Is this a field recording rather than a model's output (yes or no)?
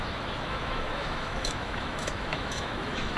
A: no